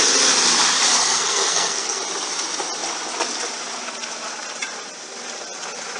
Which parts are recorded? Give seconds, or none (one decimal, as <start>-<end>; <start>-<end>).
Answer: 0.0-1.0; 2.0-6.0